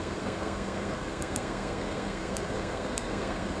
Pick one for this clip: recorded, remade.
remade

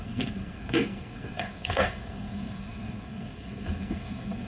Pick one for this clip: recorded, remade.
remade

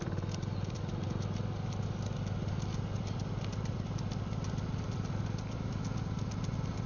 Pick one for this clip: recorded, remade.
recorded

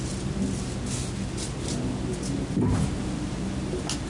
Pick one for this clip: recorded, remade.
recorded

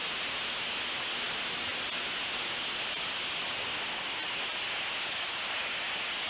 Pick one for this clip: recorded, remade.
recorded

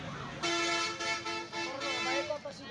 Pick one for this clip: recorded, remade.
recorded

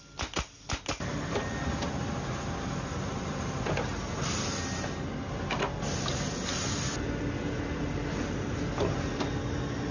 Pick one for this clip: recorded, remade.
recorded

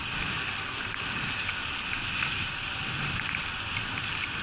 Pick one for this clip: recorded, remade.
recorded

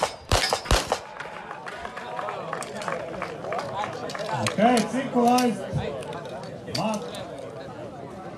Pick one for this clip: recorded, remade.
recorded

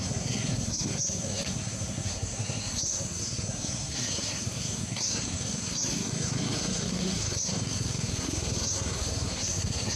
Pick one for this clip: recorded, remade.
remade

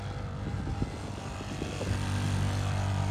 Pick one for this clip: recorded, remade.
recorded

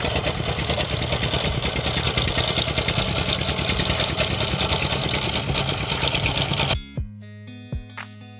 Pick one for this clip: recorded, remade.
recorded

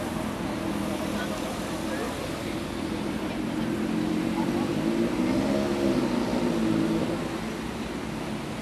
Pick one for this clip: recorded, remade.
recorded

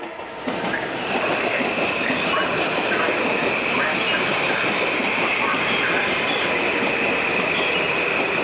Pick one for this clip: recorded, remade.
recorded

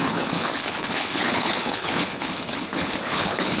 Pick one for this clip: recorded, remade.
remade